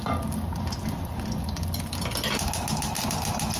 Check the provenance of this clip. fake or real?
real